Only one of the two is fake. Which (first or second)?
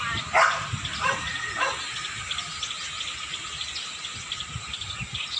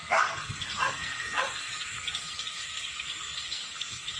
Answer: second